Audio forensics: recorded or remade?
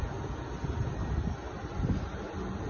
recorded